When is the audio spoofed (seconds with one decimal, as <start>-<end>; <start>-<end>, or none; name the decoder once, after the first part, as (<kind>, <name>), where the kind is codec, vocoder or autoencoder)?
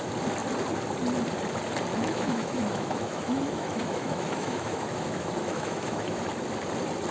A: 1.9-6.2 (autoencoder, DAC-VAE)